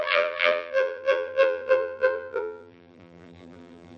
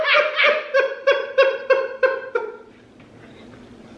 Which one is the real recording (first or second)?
second